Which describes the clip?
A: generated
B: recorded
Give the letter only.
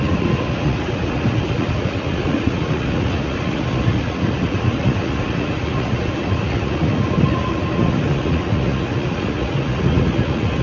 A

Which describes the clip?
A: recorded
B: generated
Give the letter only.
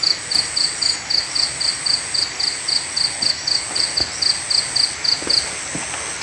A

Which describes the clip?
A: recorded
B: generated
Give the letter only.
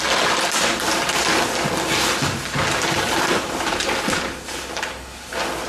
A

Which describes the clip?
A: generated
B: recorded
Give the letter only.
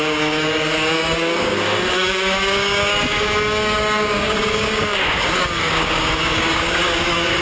A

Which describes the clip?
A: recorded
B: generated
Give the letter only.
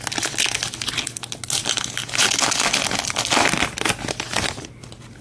A